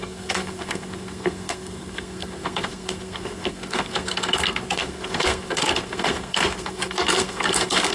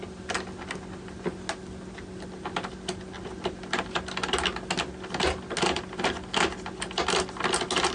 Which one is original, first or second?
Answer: second